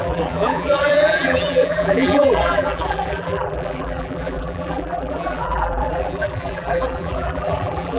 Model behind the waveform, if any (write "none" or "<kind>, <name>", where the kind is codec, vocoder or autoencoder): vocoder, BigVGAN v2